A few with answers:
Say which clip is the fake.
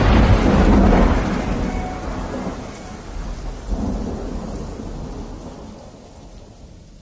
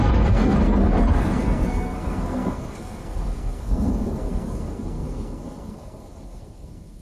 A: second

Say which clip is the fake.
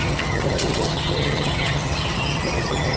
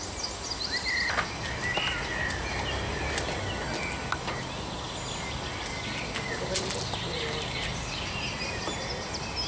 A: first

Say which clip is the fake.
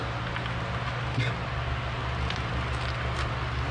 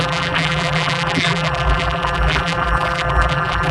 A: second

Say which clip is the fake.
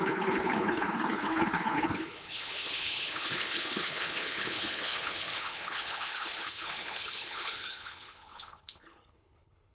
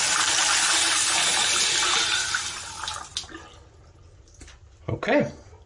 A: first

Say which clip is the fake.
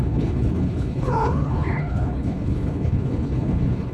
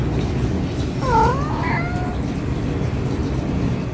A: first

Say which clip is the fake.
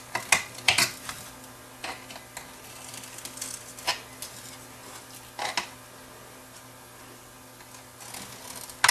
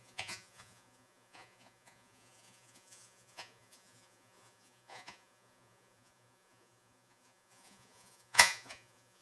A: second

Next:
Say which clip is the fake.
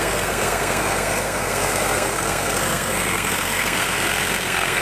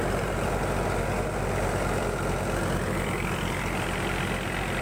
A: first